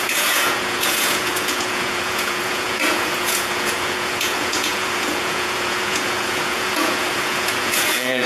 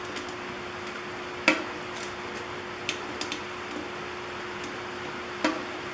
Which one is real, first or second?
second